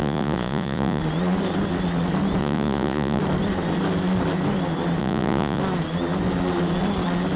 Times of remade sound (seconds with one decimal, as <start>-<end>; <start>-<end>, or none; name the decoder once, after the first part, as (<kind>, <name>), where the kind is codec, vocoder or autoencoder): 0.0-1.0 (vocoder, Vocos); 2.4-3.2; 5.0-5.6

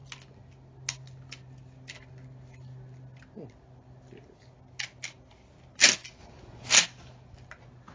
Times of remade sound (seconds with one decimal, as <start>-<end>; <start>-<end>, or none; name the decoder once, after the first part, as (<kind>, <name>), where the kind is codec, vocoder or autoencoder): 6.2-6.7 (vocoder, Vocos)

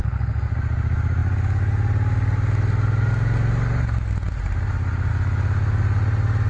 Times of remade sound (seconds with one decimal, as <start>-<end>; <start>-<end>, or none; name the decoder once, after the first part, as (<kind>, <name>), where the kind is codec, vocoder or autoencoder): 0.0-0.5 (codec, SNAC)

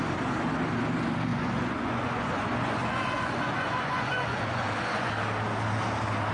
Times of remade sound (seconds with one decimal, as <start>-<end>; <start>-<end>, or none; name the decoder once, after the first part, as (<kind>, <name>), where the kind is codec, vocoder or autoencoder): 1.3-5.1 (vocoder, Vocos)

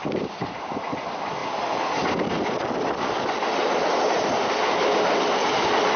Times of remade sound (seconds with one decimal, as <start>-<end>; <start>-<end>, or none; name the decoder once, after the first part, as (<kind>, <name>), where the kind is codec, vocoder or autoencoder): none